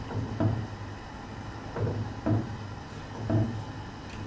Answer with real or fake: real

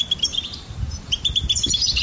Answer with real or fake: fake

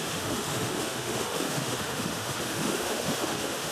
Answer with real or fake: fake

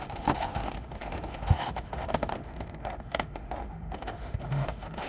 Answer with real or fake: fake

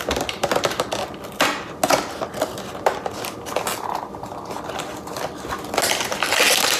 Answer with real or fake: real